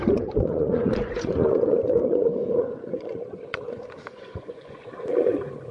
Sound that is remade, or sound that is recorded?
remade